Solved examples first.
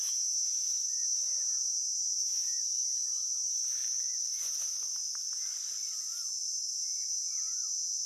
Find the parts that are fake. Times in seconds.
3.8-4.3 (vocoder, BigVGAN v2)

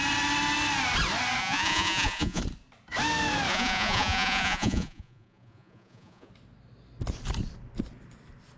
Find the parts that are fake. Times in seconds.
1.4-2.4 (vocoder, Vocos); 3.5-6.3

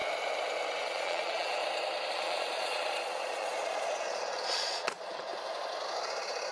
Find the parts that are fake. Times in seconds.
0.8-1.6 (vocoder, Vocos); 2.1-5.3

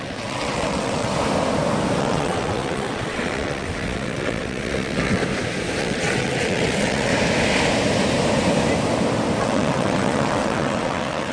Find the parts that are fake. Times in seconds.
0.0-1.1 (vocoder, WaveNeXt); 2.0-5.2; 5.8-7.1; 9.4-11.3

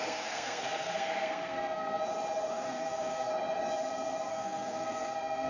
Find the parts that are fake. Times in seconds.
0.0-2.0 (codec, SNAC); 2.5-3.3; 4.3-5.5

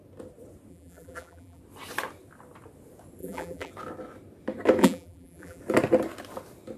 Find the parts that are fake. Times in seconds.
0.7-1.6 (vocoder, BigVGAN v2); 3.2-3.7; 4.8-5.6